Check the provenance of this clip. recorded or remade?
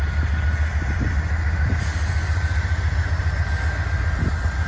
recorded